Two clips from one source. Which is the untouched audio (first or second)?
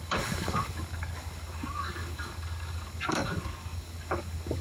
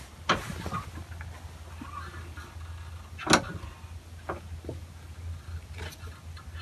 second